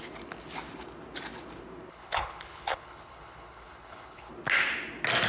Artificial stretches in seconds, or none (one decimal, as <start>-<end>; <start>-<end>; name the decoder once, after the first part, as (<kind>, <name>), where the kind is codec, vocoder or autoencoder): 1.9-4.3 (codec, HILCodec)